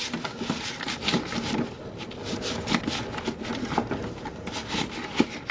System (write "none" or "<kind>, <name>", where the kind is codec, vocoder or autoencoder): none